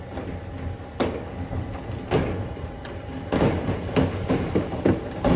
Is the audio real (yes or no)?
yes